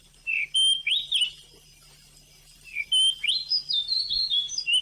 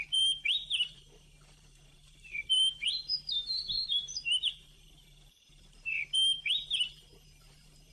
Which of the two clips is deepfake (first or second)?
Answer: second